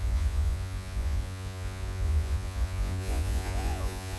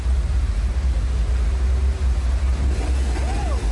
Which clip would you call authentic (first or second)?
second